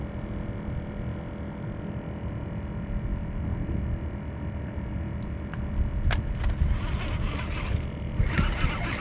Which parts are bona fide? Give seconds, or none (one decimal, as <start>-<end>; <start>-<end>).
0.0-9.0